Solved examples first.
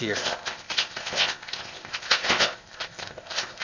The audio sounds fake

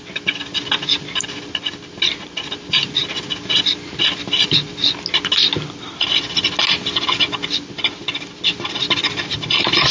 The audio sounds real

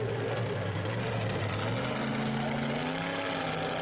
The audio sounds real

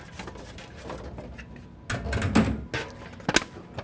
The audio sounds real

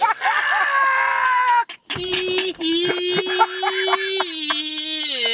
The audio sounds real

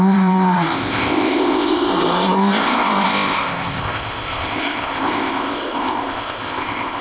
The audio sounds fake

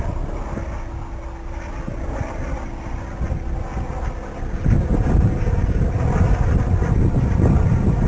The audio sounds real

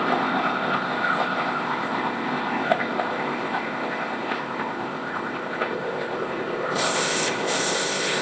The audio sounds fake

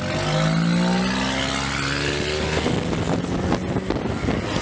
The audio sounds real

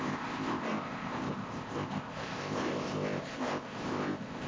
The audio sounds fake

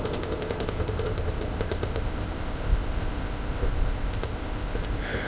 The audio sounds fake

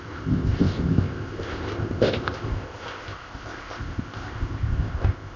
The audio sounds fake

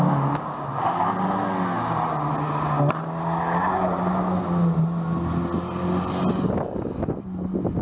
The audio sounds real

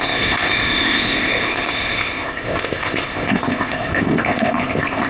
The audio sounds fake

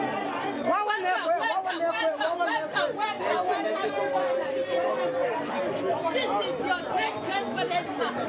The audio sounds real